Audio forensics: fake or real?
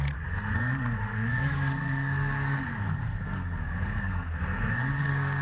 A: fake